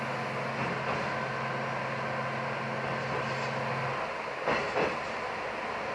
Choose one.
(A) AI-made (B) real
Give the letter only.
B